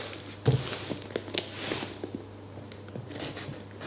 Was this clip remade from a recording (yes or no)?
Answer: no